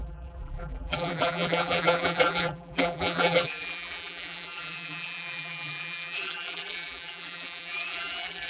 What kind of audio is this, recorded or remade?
remade